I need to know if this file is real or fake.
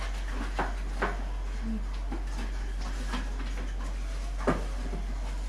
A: real